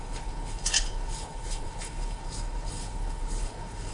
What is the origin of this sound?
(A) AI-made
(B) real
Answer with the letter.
A